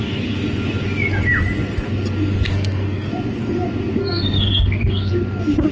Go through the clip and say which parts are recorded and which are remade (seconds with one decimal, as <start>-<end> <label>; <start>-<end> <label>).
0.0-2.5 recorded; 2.5-3.1 remade; 3.1-4.0 recorded; 4.0-5.1 remade; 5.1-5.7 recorded